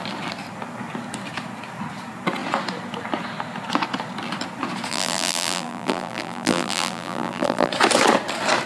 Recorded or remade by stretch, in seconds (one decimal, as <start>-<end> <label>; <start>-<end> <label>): 0.0-4.9 recorded; 4.9-7.7 remade; 7.7-8.7 recorded